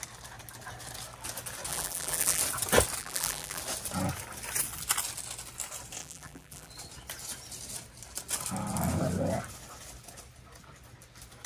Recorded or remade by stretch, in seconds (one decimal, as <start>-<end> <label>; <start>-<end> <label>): 0.0-1.7 recorded; 1.7-2.4 remade; 2.4-3.0 recorded; 3.0-3.6 remade; 3.6-6.0 recorded; 6.0-6.7 remade; 6.7-11.5 recorded